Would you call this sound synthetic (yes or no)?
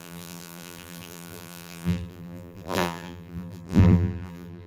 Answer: yes